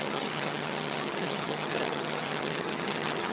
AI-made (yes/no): yes